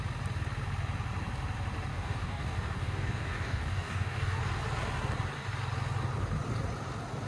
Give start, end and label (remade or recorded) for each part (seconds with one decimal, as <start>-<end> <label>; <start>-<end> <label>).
0.0-1.9 recorded; 1.9-4.4 remade; 4.4-7.3 recorded